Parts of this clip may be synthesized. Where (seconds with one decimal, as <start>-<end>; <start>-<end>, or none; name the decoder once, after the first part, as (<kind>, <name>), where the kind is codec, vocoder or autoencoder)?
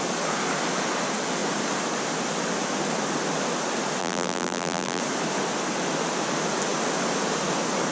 4.0-5.0 (vocoder, BigVGAN v2)